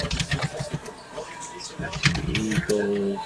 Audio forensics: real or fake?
real